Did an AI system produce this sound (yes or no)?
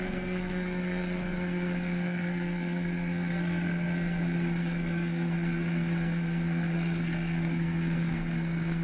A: yes